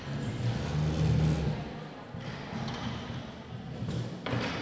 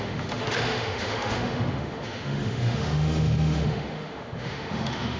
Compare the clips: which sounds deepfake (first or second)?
second